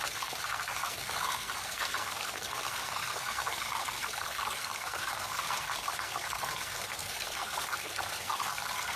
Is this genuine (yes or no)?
no